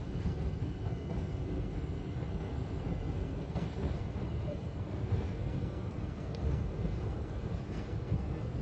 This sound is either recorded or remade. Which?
remade